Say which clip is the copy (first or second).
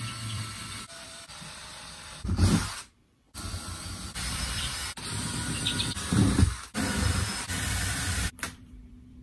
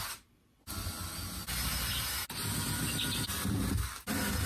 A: first